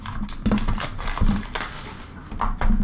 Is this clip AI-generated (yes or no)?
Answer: no